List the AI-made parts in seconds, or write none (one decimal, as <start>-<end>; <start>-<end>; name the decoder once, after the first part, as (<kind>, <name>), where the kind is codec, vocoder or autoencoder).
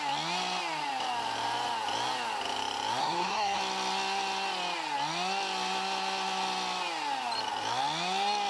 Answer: 3.0-3.6 (codec, SNAC)